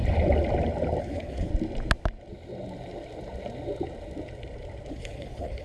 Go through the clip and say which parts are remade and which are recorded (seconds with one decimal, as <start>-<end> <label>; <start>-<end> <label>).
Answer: 0.0-1.0 recorded; 1.0-1.5 remade; 1.5-4.9 recorded; 4.9-5.6 remade